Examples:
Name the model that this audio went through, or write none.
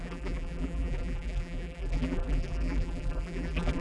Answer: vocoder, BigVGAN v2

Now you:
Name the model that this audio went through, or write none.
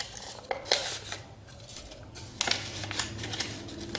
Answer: none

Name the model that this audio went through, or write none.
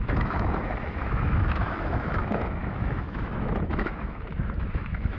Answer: autoencoder, DAC-VAE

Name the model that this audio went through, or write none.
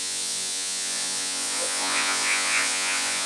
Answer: vocoder, Vocos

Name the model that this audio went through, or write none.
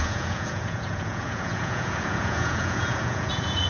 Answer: vocoder, Vocos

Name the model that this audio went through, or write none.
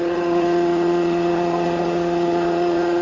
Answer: vocoder, Vocos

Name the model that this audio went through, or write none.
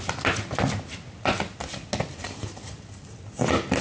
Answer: none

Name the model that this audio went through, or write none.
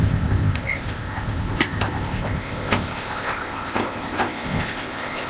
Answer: codec, ZipCodec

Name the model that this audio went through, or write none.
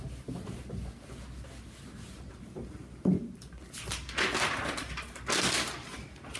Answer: none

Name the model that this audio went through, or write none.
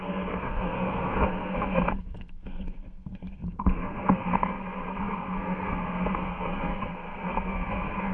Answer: codec, SNAC